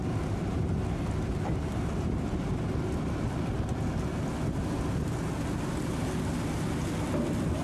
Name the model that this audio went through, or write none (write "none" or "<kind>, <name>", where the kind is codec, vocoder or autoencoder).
none